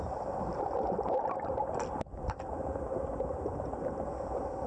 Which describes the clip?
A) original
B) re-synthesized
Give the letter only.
A